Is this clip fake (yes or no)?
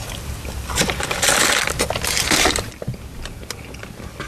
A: no